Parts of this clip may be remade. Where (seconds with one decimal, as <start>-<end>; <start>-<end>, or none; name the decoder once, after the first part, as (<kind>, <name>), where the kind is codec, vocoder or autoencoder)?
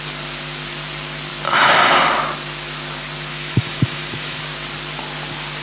3.3-4.4 (autoencoder, DAC-VAE)